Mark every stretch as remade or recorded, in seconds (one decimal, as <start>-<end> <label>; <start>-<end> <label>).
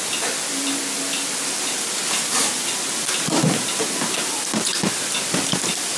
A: 0.0-6.0 recorded